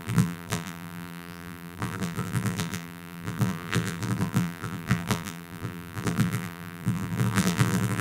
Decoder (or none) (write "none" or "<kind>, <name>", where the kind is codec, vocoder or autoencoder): vocoder, BigVGAN v2